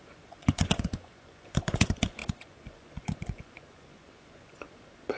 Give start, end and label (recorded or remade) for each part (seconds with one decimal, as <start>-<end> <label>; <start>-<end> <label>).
0.0-5.2 remade